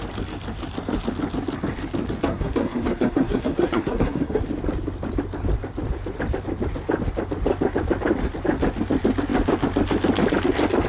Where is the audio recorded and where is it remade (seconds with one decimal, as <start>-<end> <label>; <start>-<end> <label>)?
0.0-2.3 recorded; 2.3-4.4 remade; 4.4-10.9 recorded